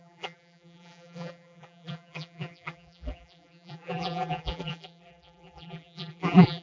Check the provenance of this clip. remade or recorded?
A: remade